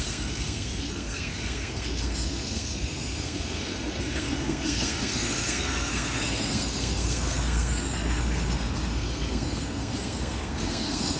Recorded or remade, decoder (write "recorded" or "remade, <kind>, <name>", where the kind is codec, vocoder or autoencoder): remade, codec, SNAC